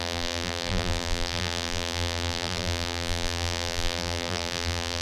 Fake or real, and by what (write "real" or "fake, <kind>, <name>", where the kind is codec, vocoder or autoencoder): fake, vocoder, BigVGAN v2